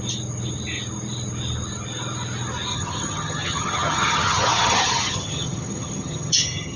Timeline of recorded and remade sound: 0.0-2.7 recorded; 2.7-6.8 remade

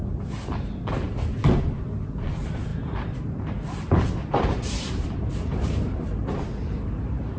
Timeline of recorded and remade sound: 0.0-0.9 remade; 0.9-2.7 recorded; 2.7-7.4 remade

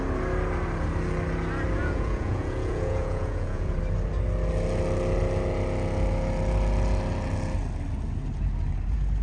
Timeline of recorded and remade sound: 0.0-1.8 recorded; 1.8-3.8 remade; 3.8-9.2 recorded

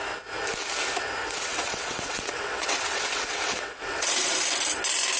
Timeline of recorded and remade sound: 0.0-1.2 recorded; 1.2-4.3 remade; 4.3-5.2 recorded

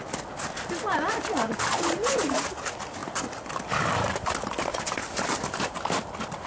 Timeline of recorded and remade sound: 0.0-1.7 recorded; 1.7-2.4 remade; 2.4-6.5 recorded